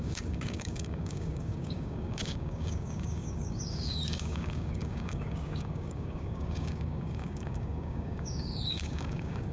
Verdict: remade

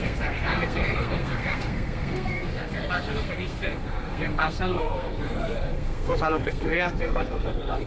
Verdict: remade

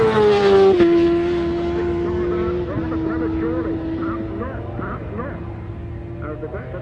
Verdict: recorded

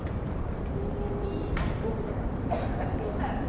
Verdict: remade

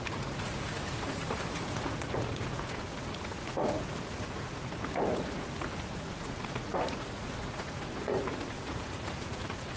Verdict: remade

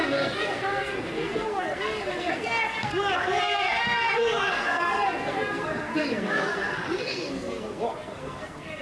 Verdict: remade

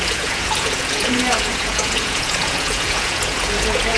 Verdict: remade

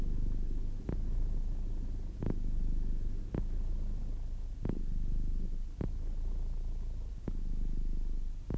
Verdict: recorded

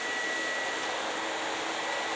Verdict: recorded